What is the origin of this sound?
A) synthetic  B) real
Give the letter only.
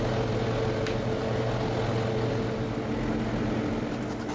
B